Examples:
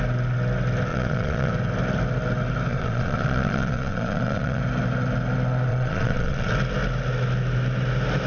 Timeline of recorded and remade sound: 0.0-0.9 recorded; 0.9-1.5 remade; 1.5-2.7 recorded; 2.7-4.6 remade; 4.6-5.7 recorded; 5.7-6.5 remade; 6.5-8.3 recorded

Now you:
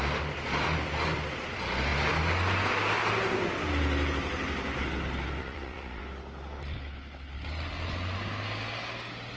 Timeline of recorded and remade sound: 0.0-5.4 recorded; 5.4-6.0 remade; 6.0-9.4 recorded

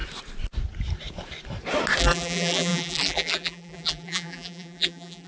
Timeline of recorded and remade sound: 0.0-2.0 recorded; 2.0-5.3 remade

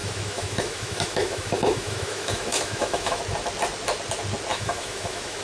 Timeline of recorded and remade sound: 0.0-3.2 remade; 3.2-4.5 recorded; 4.5-5.4 remade

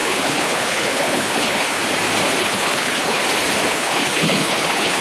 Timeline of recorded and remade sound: 0.0-1.8 remade; 1.8-2.4 recorded; 2.4-3.2 remade; 3.2-3.7 recorded; 3.7-5.0 remade

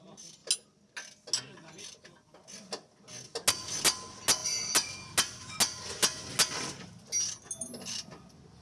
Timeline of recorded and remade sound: 0.0-8.6 recorded

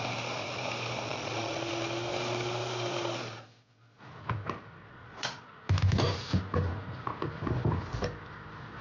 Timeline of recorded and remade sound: 0.0-1.1 recorded; 1.1-1.6 remade; 1.6-4.8 recorded; 4.8-5.4 remade; 5.4-8.8 recorded

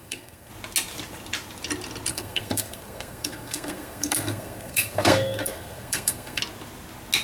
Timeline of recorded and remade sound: 0.0-0.5 remade; 0.5-2.1 recorded; 2.1-6.4 remade; 6.4-7.2 recorded